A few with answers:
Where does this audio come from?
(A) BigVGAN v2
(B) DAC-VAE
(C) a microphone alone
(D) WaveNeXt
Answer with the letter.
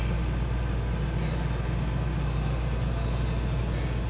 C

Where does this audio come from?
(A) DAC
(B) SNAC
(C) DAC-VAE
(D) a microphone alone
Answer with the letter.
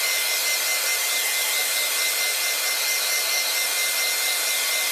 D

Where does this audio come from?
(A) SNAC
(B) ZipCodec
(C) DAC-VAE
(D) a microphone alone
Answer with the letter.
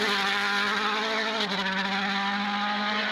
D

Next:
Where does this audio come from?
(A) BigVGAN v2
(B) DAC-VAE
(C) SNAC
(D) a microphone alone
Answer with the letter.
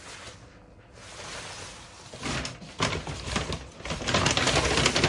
D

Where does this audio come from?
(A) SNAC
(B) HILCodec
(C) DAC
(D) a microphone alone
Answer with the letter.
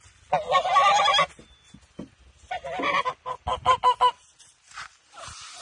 D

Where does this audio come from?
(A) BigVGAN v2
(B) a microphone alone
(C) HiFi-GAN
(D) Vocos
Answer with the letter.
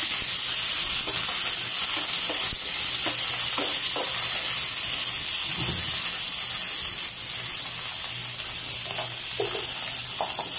B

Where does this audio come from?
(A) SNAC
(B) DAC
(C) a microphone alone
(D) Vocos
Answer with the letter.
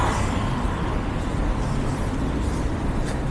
C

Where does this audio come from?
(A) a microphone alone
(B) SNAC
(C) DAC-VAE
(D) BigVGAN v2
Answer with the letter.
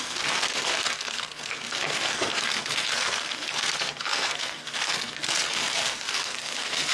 B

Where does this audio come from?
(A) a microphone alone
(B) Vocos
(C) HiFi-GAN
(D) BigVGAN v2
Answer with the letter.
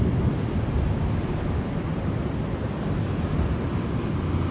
A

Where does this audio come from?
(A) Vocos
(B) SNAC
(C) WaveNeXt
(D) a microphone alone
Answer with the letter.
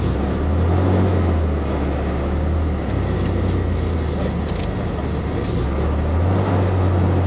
D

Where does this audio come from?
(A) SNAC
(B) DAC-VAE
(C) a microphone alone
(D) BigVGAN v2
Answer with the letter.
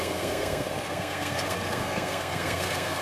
A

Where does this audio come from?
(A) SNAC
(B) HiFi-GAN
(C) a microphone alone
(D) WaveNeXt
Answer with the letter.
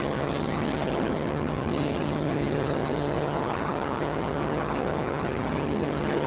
B